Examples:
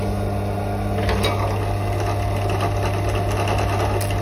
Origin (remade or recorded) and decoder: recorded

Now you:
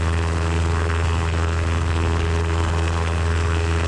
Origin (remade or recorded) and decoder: remade, codec, SNAC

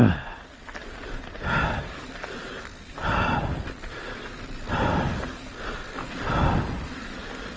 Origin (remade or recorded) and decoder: recorded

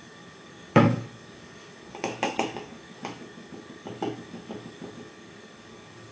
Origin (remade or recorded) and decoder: remade, codec, DAC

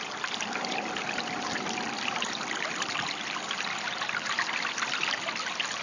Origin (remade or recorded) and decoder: recorded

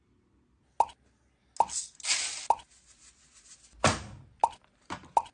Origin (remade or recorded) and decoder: recorded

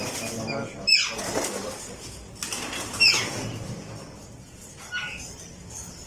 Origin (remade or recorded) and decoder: recorded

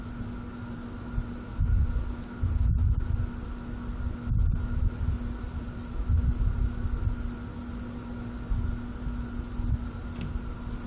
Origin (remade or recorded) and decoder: recorded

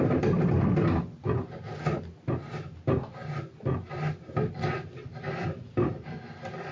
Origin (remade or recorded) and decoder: recorded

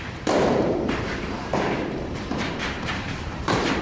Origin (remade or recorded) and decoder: remade, vocoder, BigVGAN v2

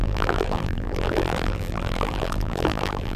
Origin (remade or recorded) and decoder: remade, vocoder, BigVGAN v2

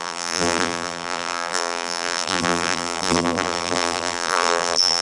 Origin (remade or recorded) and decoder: remade, vocoder, BigVGAN v2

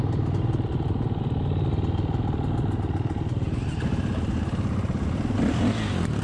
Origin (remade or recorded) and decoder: recorded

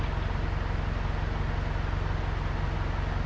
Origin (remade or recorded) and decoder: recorded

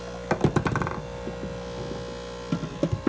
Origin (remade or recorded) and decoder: recorded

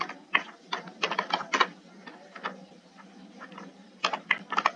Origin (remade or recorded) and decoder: recorded